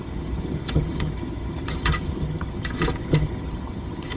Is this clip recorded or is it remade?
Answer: remade